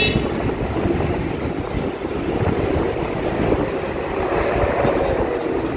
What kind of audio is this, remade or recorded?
recorded